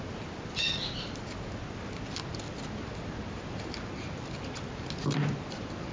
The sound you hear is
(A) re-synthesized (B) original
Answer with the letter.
B